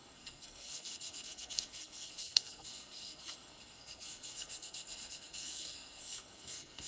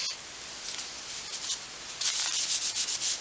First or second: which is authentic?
second